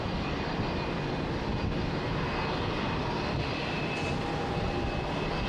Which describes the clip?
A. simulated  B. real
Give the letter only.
B